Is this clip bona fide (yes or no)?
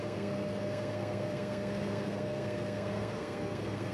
no